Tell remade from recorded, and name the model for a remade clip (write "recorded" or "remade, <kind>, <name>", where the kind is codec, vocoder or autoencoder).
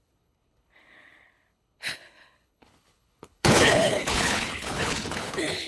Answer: remade, codec, HILCodec